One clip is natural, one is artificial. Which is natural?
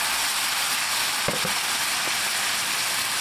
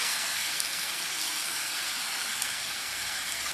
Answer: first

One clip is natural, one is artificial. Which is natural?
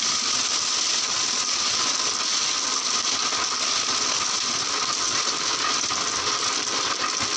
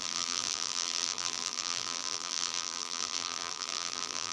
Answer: first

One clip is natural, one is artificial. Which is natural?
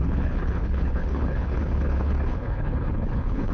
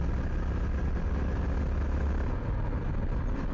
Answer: second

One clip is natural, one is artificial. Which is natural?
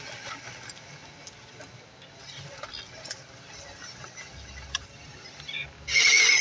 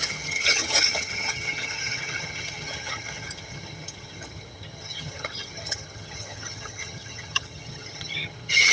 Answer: first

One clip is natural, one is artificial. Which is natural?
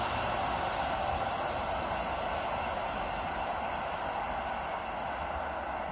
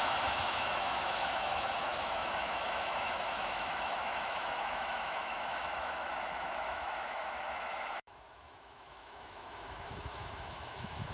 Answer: first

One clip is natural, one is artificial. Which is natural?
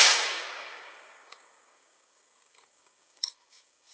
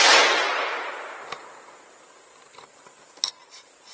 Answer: second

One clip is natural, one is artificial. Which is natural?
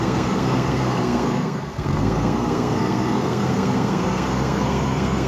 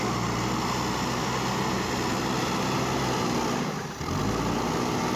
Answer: second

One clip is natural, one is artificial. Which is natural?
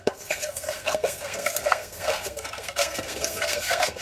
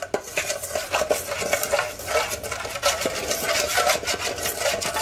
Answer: second